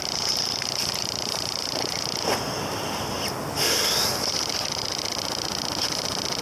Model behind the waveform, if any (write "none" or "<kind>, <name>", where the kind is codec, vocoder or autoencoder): none